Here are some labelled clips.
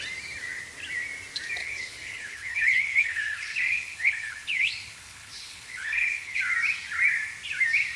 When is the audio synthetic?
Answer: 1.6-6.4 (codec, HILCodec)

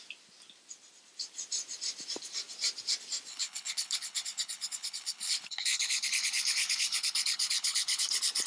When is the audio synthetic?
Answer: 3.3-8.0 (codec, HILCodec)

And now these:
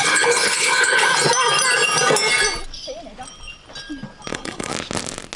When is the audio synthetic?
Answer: 0.0-1.1 (codec, HILCodec); 4.3-4.7